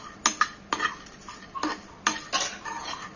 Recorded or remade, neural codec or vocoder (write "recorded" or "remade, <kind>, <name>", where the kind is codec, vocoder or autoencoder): recorded